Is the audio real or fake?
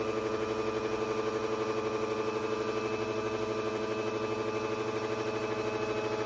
real